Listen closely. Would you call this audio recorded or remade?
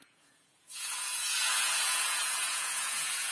remade